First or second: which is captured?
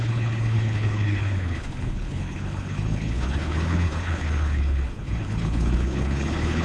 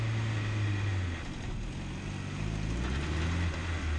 second